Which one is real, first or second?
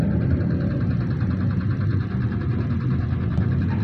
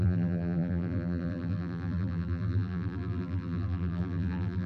first